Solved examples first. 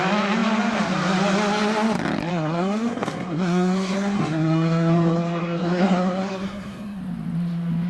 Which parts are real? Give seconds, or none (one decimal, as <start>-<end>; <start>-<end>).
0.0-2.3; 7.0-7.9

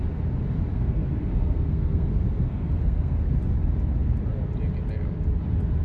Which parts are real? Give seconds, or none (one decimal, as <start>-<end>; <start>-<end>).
0.0-0.7; 3.3-5.8

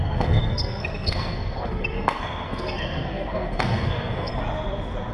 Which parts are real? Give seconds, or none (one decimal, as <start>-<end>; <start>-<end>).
4.3-5.1

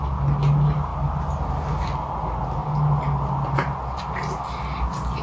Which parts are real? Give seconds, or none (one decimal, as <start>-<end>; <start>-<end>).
0.0-5.2

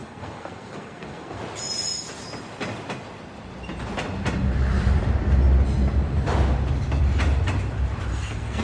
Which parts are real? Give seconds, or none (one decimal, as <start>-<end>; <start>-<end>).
1.4-8.1

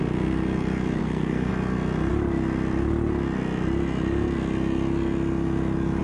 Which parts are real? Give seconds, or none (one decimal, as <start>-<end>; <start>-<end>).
0.0-1.0; 1.5-6.0